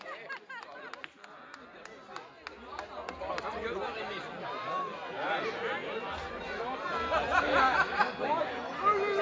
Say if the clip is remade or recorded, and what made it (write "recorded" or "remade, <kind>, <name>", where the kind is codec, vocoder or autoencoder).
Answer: recorded